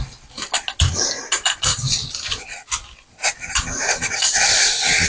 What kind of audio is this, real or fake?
real